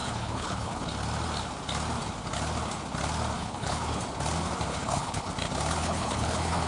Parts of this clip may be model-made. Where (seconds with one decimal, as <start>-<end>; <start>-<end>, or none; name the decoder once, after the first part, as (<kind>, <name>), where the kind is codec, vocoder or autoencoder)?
0.0-0.9 (codec, HILCodec); 3.4-4.0; 4.7-5.3; 5.8-6.7